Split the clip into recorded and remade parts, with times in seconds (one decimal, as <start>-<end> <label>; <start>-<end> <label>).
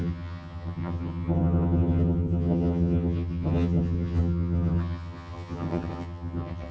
0.0-6.7 remade